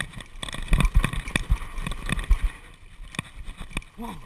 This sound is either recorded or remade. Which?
recorded